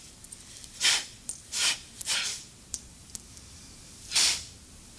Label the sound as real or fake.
fake